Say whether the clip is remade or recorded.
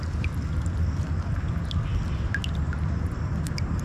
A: recorded